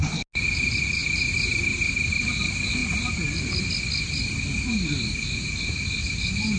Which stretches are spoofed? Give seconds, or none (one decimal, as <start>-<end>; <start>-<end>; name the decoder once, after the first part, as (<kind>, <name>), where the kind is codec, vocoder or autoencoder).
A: 1.0-2.3 (vocoder, BigVGAN v2); 2.8-3.6